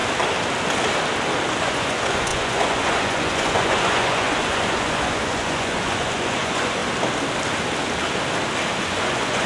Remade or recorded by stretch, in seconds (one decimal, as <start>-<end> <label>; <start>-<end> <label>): 0.0-1.6 recorded; 1.6-6.8 remade; 6.8-8.8 recorded; 8.8-9.5 remade